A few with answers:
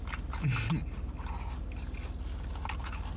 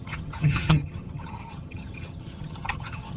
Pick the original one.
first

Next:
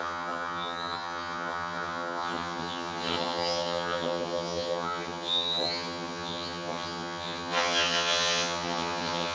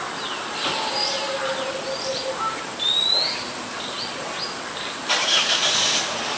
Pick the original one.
second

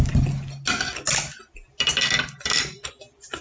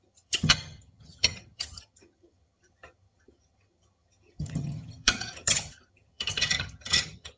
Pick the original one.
first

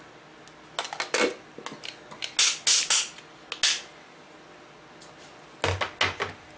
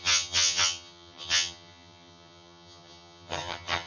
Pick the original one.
first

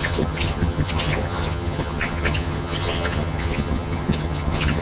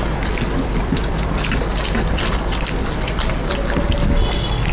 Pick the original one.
second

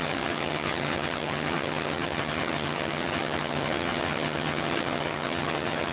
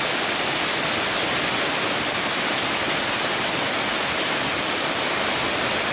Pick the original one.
second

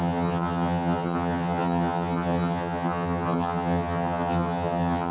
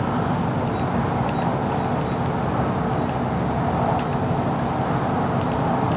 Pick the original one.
second